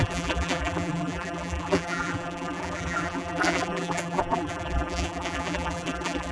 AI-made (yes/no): yes